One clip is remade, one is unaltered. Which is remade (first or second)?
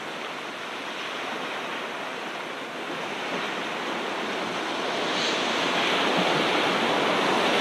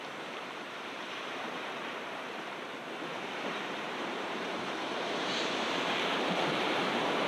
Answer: second